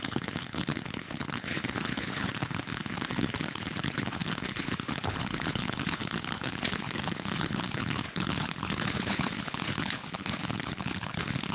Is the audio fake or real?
fake